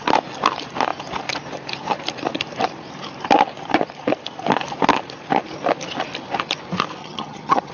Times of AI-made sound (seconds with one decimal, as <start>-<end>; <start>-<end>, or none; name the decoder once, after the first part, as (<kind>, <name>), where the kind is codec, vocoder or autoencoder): 7.0-7.7 (vocoder, HiFi-GAN)